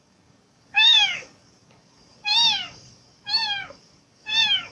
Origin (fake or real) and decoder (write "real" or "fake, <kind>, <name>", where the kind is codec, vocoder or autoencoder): fake, codec, DAC